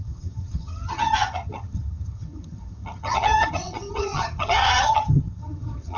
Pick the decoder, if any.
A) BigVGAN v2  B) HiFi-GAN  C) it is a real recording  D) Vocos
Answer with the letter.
B